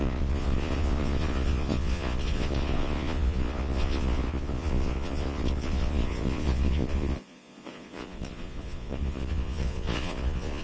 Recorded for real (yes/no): no